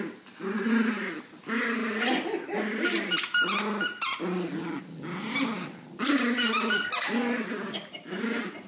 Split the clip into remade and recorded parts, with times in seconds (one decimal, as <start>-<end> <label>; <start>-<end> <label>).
0.0-8.7 recorded